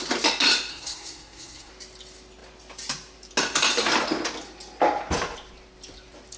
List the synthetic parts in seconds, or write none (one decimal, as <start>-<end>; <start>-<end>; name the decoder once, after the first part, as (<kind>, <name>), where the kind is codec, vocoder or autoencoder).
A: 0.7-1.7 (codec, SNAC)